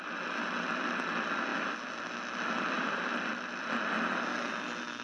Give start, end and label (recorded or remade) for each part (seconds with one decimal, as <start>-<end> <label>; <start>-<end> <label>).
0.0-5.0 recorded